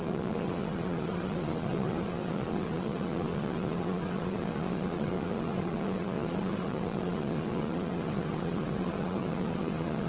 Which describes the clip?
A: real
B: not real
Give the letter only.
B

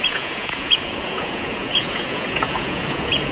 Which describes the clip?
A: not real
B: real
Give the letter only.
A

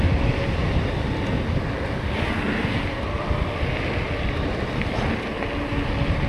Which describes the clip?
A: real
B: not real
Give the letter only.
A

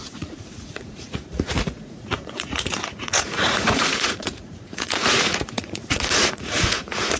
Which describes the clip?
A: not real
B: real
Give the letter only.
A